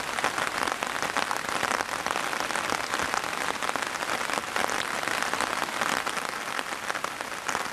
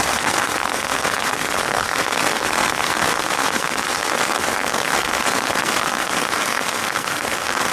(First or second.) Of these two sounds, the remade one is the second